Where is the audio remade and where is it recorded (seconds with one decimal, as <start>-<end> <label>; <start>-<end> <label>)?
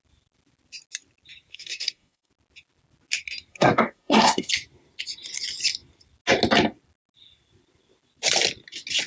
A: 0.0-1.5 recorded; 1.5-2.3 remade; 2.3-3.5 recorded; 3.5-4.5 remade; 4.5-9.1 recorded